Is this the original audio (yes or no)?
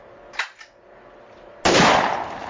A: yes